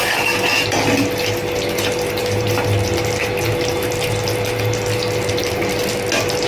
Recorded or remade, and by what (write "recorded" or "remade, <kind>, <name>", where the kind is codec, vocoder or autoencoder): recorded